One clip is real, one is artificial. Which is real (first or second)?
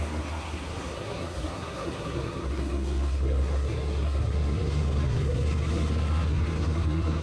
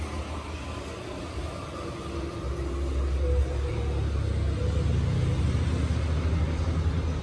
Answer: second